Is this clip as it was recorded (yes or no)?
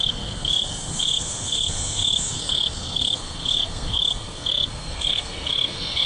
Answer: no